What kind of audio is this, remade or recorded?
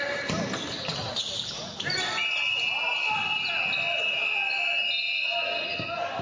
recorded